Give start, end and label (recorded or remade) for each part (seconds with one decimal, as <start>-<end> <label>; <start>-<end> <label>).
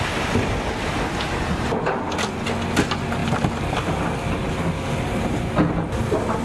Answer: 0.0-6.4 recorded